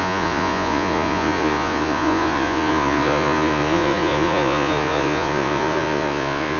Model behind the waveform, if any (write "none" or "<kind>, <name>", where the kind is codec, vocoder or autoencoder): vocoder, Vocos